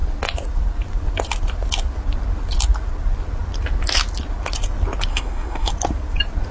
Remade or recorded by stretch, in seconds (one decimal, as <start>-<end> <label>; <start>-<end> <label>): 0.0-5.1 recorded; 5.1-5.7 remade; 5.7-6.5 recorded